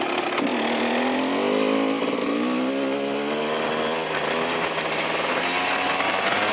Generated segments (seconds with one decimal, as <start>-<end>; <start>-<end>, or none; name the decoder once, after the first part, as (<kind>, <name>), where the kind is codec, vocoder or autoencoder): none